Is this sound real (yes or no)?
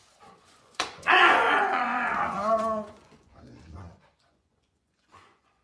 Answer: no